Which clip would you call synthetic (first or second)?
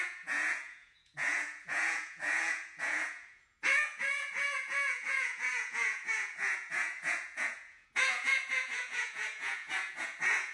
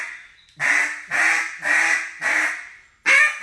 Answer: first